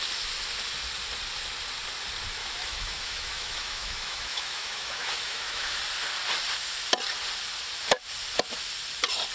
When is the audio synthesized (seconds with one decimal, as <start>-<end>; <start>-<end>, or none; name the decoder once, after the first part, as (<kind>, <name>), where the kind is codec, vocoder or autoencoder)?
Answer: 2.4-5.8 (autoencoder, DAC-VAE)